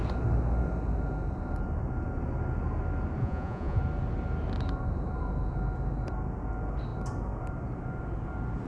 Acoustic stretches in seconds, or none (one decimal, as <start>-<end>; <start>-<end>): 0.0-3.2; 3.8-8.7

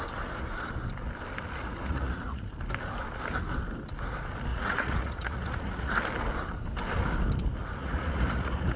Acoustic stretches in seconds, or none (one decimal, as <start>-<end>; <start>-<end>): 0.0-1.6; 2.5-4.5; 6.0-7.8